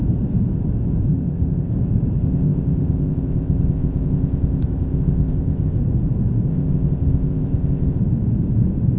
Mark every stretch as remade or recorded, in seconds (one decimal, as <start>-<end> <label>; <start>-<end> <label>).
0.0-1.1 recorded; 1.1-1.7 remade; 1.7-2.2 recorded; 2.2-5.8 remade; 5.8-6.5 recorded; 6.5-8.0 remade; 8.0-9.0 recorded